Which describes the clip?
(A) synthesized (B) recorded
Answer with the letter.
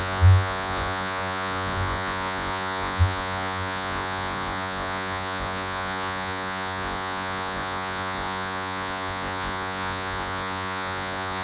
A